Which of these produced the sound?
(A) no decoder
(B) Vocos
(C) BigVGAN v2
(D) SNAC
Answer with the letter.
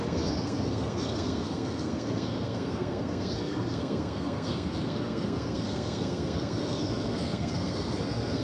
D